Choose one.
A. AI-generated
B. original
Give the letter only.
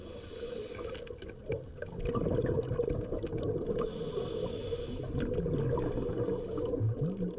B